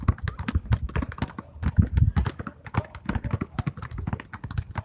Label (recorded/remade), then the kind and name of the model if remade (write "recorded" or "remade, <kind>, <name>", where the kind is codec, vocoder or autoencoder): recorded